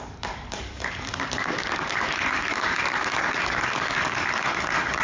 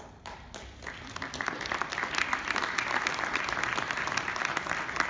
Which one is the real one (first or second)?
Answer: second